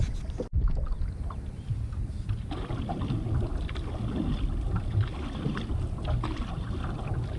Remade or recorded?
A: recorded